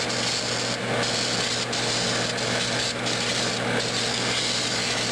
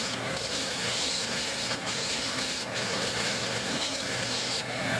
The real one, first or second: first